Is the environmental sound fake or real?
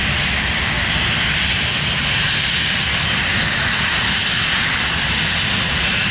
real